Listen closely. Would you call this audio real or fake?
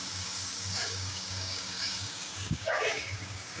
fake